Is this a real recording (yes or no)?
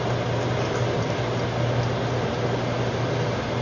yes